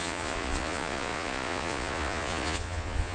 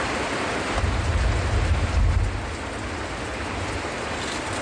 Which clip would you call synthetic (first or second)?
first